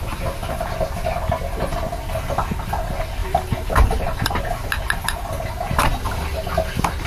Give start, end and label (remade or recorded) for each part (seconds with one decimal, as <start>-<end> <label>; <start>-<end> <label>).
0.0-3.2 recorded; 3.2-3.9 remade; 3.9-7.1 recorded